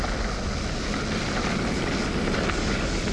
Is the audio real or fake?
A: real